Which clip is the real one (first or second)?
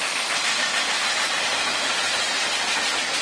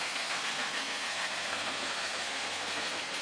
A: first